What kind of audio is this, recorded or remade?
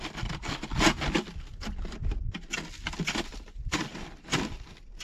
recorded